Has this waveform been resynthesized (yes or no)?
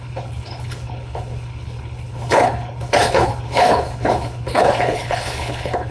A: yes